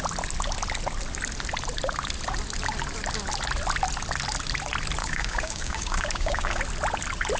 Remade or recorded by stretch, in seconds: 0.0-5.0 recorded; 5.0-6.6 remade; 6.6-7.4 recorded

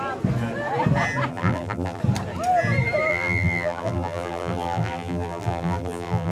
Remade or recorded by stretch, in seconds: 0.0-1.3 recorded; 1.3-2.0 remade; 2.0-3.1 recorded; 3.1-6.3 remade

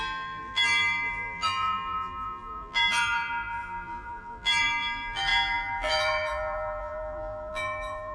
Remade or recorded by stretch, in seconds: 0.0-8.1 remade

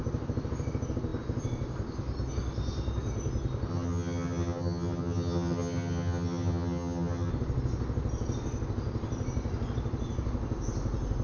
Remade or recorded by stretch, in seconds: 0.0-3.7 recorded; 3.7-7.3 remade; 7.3-11.2 recorded

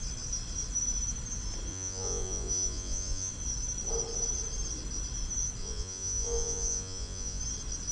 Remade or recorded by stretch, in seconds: 0.0-1.7 recorded; 1.7-3.3 remade; 3.3-5.6 recorded; 5.6-7.4 remade; 7.4-7.9 recorded

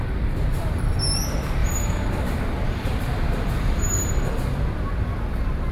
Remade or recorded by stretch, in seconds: 0.0-0.5 recorded; 0.5-1.0 remade; 1.0-1.6 recorded; 1.6-4.3 remade; 4.3-5.7 recorded